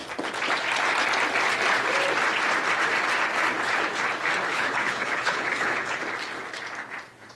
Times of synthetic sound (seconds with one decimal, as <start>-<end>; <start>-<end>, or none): 4.5-6.0